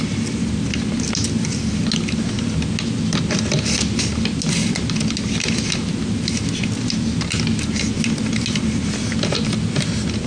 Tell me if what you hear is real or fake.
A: real